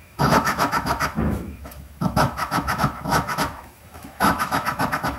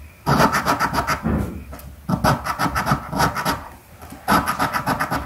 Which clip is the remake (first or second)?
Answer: first